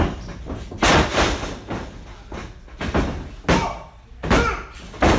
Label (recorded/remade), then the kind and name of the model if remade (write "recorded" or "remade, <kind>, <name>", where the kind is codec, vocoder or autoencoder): recorded